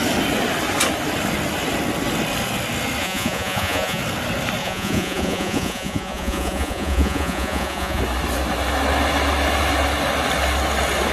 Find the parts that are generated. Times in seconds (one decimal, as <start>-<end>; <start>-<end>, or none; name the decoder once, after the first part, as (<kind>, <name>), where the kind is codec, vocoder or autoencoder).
3.0-4.0 (vocoder, Vocos); 4.6-8.0